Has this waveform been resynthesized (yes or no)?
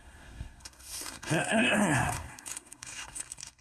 yes